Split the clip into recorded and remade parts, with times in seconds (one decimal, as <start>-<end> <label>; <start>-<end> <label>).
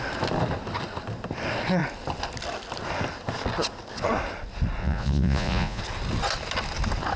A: 0.0-4.8 recorded; 4.8-5.8 remade; 5.8-7.2 recorded